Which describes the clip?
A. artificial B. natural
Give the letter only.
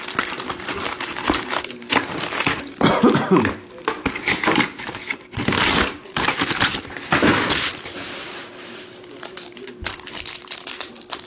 A